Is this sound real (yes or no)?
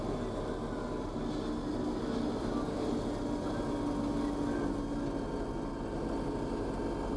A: yes